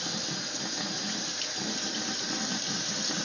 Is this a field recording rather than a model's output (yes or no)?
yes